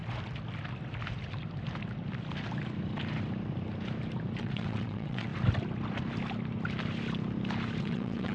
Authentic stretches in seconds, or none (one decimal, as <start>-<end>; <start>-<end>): 0.0-4.4; 5.3-7.8